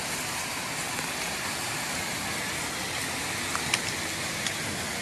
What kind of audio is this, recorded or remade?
recorded